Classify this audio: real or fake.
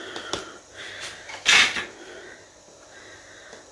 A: real